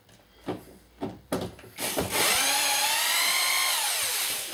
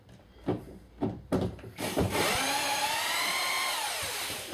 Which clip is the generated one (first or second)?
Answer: second